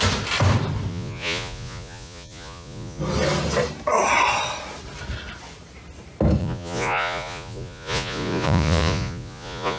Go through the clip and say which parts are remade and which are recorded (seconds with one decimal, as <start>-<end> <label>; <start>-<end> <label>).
0.0-0.9 recorded; 0.9-3.0 remade; 3.0-6.4 recorded; 6.4-9.8 remade